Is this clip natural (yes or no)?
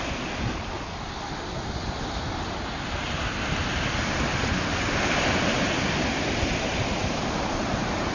yes